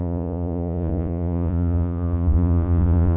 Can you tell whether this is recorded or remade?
remade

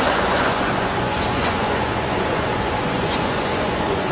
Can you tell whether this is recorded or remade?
remade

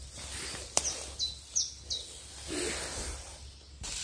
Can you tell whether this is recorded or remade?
recorded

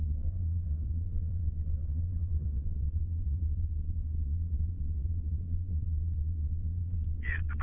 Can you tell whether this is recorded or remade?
remade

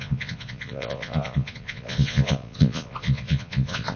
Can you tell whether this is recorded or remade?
remade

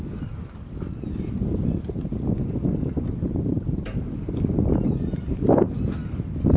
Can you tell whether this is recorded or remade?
recorded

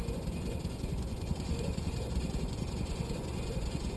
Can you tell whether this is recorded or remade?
remade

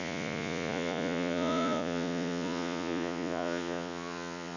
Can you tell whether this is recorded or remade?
remade